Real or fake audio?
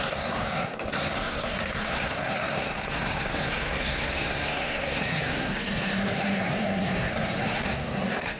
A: fake